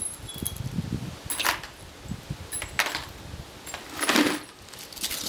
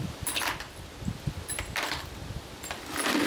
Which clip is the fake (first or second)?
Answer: second